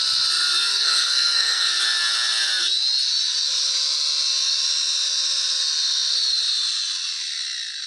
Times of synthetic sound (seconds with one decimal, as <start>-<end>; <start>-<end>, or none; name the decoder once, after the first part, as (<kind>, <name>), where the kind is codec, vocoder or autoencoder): 0.7-1.8 (codec, SNAC)